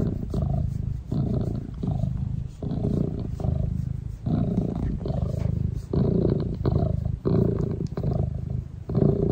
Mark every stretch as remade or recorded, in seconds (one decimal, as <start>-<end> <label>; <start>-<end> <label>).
0.0-0.6 remade; 0.6-5.0 recorded; 5.0-6.8 remade; 6.8-9.3 recorded